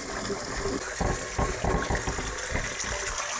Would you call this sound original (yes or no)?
yes